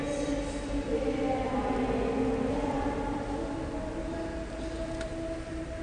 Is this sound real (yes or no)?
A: yes